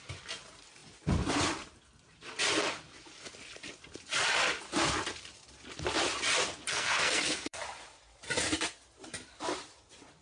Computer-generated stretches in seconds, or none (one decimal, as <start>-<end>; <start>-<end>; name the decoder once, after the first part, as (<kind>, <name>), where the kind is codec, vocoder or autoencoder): 6.7-7.6 (codec, SNAC)